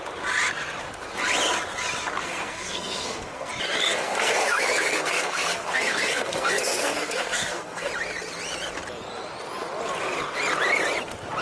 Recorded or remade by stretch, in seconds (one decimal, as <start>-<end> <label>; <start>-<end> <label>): 0.0-2.2 recorded; 2.2-3.5 remade; 3.5-3.9 recorded; 3.9-7.9 remade; 7.9-11.4 recorded